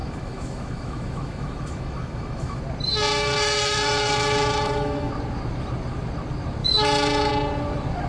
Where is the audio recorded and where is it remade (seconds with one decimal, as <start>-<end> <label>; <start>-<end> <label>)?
0.0-2.6 remade; 2.6-3.1 recorded; 3.1-5.1 remade; 5.1-6.6 recorded; 6.6-7.3 remade; 7.3-8.1 recorded